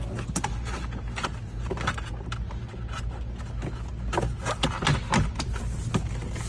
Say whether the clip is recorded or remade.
recorded